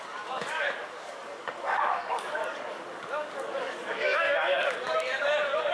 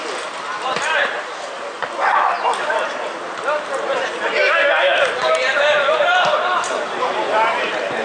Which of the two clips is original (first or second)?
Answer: second